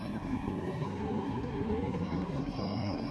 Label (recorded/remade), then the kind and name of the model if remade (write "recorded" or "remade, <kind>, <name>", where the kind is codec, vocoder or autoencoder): remade, codec, SNAC